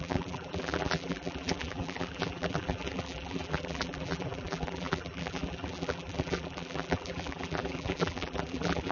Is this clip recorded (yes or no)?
no